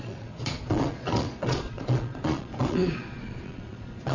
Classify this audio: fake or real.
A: fake